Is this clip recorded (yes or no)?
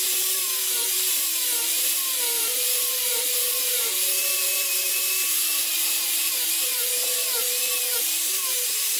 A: no